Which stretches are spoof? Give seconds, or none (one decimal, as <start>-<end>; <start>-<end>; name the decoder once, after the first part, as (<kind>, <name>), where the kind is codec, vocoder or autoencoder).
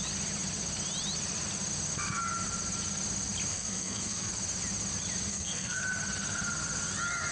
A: 3.5-4.3 (codec, SNAC); 5.3-5.8